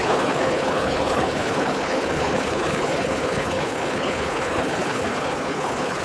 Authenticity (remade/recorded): remade